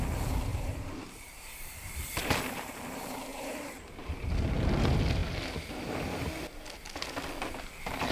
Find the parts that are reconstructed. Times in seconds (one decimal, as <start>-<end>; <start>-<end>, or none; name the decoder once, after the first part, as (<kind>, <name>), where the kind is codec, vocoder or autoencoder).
0.5-2.9 (vocoder, BigVGAN v2); 3.3-4.3